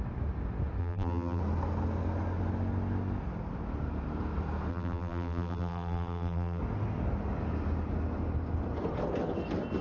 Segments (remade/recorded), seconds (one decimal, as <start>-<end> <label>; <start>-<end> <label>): 0.0-0.8 recorded; 0.8-1.4 remade; 1.4-4.7 recorded; 4.7-6.6 remade; 6.6-9.8 recorded